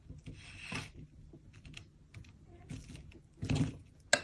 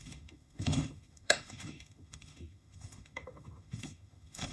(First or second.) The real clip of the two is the first